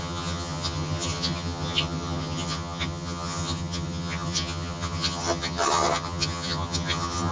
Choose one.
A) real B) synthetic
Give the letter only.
B